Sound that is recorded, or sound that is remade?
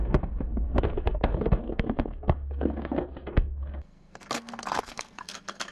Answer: remade